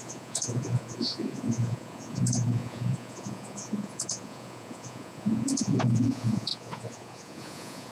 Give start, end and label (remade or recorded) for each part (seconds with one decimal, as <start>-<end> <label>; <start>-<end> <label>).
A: 0.0-7.9 remade